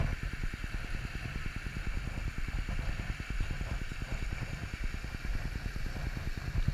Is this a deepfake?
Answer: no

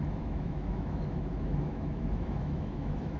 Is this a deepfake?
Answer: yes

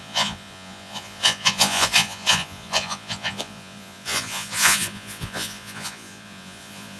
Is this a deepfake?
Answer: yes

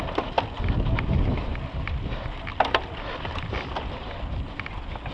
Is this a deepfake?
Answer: no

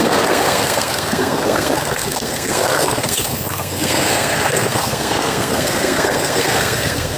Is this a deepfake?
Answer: yes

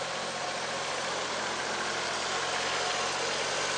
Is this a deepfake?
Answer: no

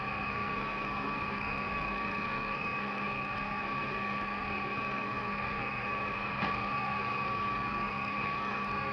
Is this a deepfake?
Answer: yes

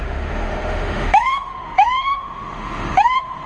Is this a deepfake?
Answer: yes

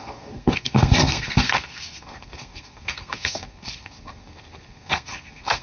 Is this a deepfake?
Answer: yes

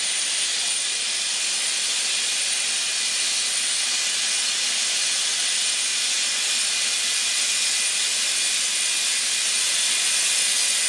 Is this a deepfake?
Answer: no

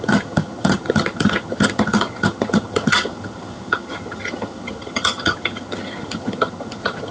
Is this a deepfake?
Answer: yes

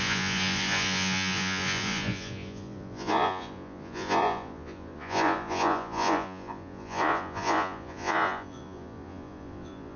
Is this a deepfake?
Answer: yes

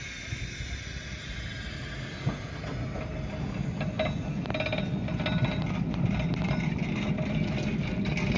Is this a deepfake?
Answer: no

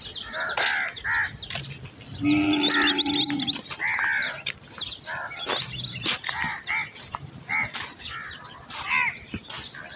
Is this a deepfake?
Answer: no